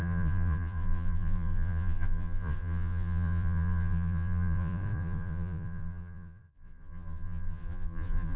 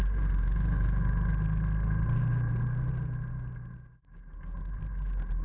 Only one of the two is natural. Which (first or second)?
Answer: second